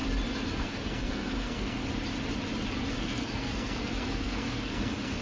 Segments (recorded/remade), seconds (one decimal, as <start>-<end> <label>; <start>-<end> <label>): 0.0-0.6 recorded; 0.6-1.8 remade; 1.8-2.9 recorded; 2.9-5.2 remade